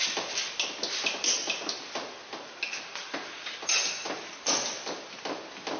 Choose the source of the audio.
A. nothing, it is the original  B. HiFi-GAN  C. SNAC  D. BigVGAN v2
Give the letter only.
A